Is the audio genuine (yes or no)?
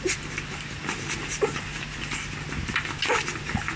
yes